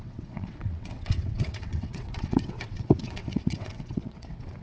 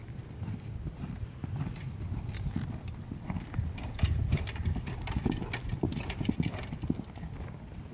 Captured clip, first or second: second